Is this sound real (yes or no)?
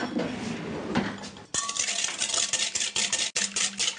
yes